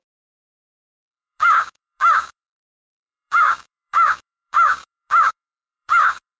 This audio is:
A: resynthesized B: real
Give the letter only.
A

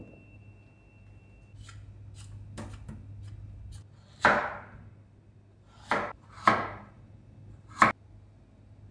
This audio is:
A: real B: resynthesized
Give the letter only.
A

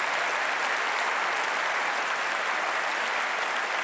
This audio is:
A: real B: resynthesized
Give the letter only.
A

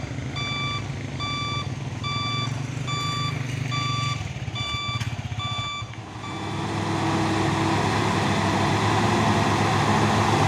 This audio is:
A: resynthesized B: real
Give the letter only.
B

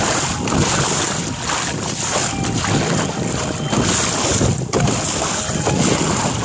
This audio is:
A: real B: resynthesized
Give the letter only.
A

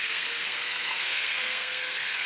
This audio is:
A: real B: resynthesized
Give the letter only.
B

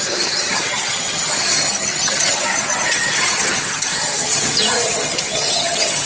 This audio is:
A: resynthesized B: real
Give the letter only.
A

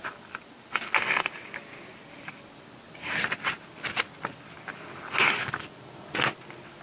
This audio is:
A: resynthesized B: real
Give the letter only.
B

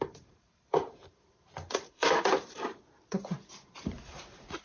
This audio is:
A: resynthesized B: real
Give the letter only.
A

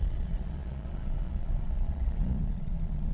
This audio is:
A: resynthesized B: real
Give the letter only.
A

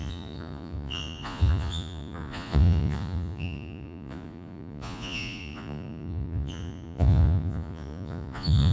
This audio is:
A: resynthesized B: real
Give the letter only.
A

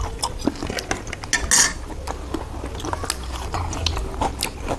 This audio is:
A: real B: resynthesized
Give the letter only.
A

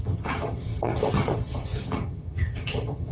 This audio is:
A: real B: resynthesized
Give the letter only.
B